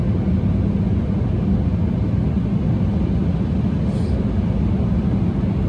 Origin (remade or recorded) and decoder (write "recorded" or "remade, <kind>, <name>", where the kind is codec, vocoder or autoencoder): recorded